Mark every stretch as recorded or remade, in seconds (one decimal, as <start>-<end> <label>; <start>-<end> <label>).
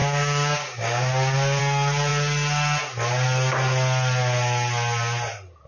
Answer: 0.0-1.6 remade; 1.6-5.7 recorded